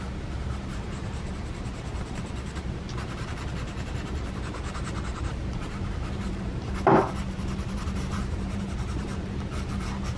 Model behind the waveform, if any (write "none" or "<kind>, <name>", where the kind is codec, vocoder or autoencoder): vocoder, BigVGAN v2